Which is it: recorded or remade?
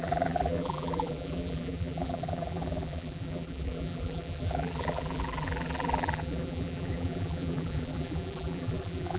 remade